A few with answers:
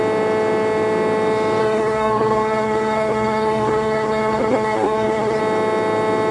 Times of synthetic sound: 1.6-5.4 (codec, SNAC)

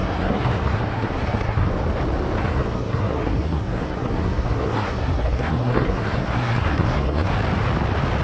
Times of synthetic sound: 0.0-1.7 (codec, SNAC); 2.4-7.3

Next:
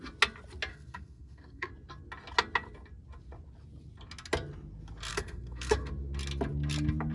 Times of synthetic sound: 0.7-1.7 (codec, SNAC); 5.1-5.9

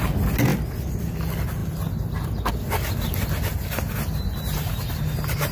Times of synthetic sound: none